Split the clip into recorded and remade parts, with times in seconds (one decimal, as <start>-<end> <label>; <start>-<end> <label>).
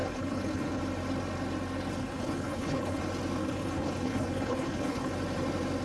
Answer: 0.0-0.8 remade; 0.8-2.0 recorded; 2.0-3.0 remade; 3.0-3.4 recorded; 3.4-5.1 remade; 5.1-5.8 recorded